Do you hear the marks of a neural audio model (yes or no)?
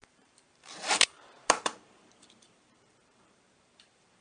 yes